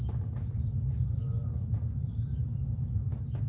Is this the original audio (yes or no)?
yes